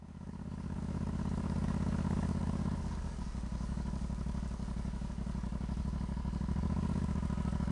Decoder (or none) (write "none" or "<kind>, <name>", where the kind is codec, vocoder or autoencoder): codec, DAC